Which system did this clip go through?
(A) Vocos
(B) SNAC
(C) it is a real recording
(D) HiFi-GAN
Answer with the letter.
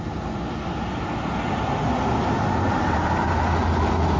C